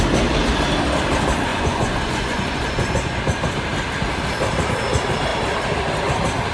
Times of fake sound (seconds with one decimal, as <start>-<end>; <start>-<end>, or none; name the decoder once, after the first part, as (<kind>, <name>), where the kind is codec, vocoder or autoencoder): 1.5-3.2 (vocoder, Vocos)